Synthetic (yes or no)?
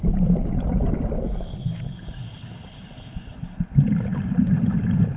no